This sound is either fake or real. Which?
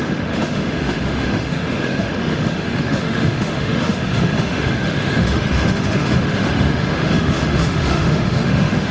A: fake